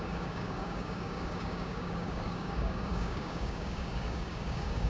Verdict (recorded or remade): remade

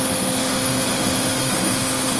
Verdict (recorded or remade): remade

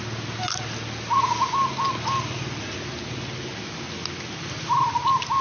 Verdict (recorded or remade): recorded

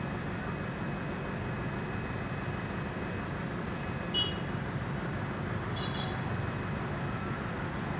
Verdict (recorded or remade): recorded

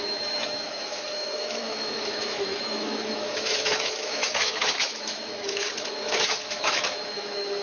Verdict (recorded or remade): remade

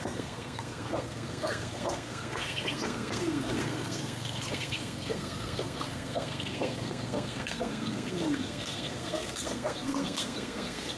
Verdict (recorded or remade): remade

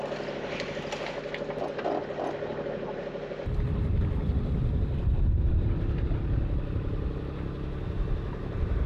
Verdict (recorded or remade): recorded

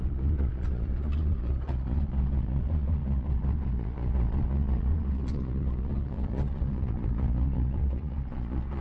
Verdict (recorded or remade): remade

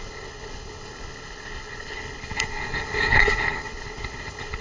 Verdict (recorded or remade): remade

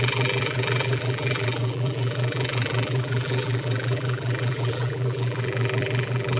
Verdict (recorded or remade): remade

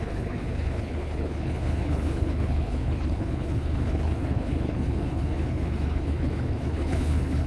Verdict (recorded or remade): remade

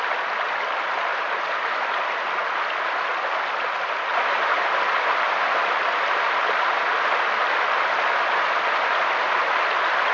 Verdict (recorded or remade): recorded